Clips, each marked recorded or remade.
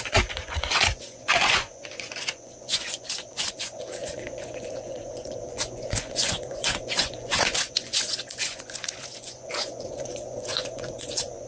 remade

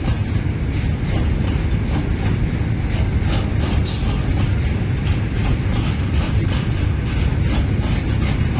recorded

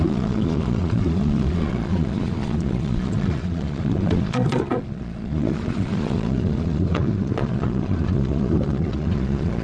remade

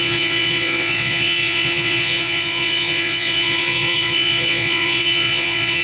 remade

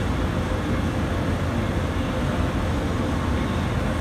recorded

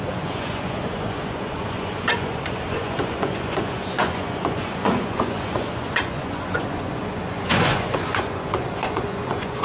remade